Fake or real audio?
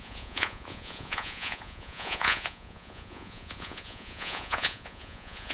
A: fake